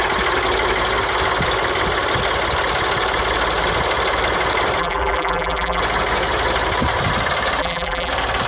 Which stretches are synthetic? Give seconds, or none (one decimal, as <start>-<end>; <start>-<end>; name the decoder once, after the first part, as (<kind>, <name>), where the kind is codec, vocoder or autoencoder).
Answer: 4.8-5.8 (vocoder, BigVGAN v2); 7.6-8.1